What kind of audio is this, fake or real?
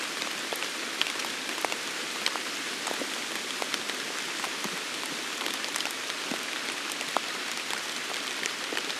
fake